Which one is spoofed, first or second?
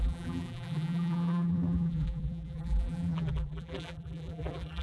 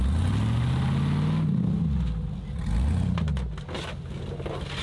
first